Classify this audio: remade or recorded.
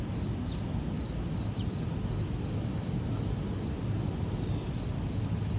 recorded